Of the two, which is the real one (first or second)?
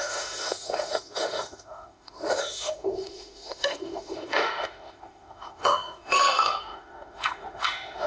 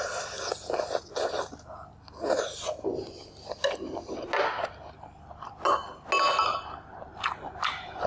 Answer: second